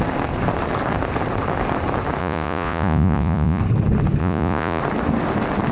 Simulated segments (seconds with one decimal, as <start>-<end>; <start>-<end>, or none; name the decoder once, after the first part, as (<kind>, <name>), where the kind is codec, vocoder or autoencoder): 2.2-3.6 (vocoder, Vocos); 4.2-4.8